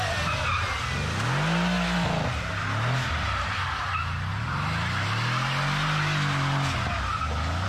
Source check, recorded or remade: recorded